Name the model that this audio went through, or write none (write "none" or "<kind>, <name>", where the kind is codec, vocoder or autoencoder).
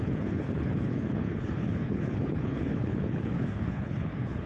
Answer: codec, HILCodec